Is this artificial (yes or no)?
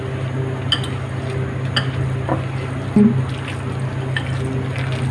no